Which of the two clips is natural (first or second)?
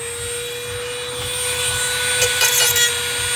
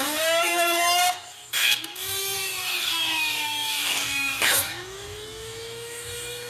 first